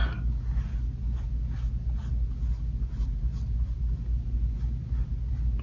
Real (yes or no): yes